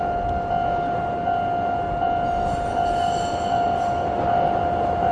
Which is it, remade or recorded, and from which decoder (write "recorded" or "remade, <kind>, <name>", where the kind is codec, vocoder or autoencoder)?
recorded